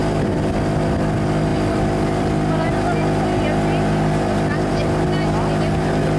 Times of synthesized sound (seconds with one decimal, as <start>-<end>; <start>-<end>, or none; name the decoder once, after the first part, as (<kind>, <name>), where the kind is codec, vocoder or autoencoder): 0.0-0.5 (vocoder, BigVGAN v2)